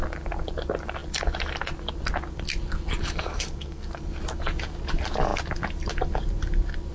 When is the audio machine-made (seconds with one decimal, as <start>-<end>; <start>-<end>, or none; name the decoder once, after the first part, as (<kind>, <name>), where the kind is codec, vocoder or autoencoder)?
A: 3.3-3.9 (codec, SNAC)